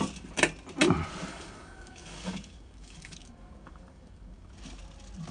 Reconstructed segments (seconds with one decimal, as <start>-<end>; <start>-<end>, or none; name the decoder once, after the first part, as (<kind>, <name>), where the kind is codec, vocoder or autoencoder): 1.3-4.5 (codec, DAC)